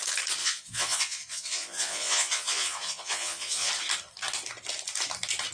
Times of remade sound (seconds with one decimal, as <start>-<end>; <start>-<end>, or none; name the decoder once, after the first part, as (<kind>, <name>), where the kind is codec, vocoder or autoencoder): 0.4-3.7 (vocoder, Vocos)